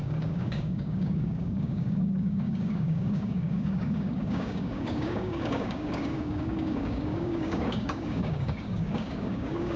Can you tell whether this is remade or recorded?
remade